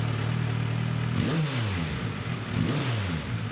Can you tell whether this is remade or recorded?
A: recorded